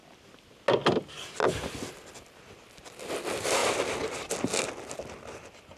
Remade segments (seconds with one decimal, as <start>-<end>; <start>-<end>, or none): 3.6-4.3